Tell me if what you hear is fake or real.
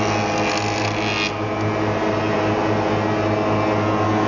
real